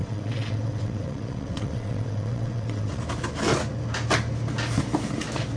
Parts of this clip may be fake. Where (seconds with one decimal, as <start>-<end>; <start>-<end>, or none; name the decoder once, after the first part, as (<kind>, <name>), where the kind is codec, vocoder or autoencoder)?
0.0-3.0 (vocoder, WaveNeXt)